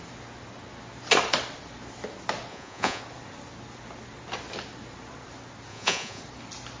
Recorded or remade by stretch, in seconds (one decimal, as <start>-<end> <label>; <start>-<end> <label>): 0.0-2.5 recorded; 2.5-3.0 remade; 3.0-5.7 recorded; 5.7-6.2 remade; 6.2-6.8 recorded